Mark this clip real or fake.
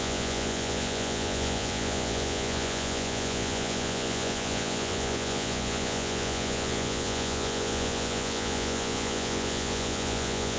fake